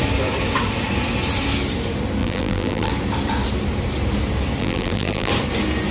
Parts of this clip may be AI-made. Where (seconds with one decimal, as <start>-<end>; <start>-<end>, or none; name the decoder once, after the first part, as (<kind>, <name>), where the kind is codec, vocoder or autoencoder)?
2.2-2.9 (vocoder, BigVGAN v2); 4.6-5.3